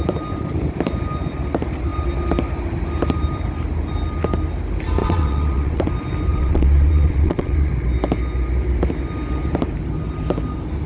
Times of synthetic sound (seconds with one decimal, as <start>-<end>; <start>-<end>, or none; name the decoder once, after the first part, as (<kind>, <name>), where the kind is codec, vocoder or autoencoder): 5.0-5.8 (vocoder, WaveNeXt); 6.3-7.7